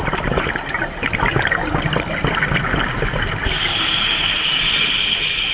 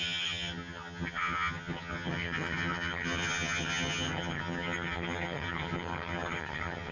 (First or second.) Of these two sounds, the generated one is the second